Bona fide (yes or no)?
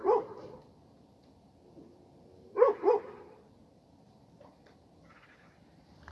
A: no